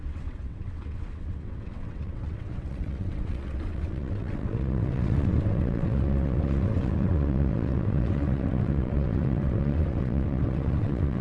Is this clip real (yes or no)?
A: no